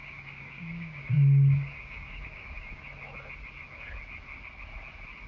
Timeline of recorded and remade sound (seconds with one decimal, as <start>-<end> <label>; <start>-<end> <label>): 0.0-2.8 remade; 2.8-5.3 recorded